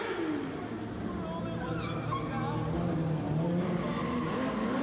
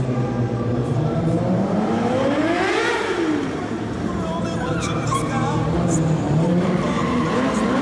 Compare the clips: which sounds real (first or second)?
first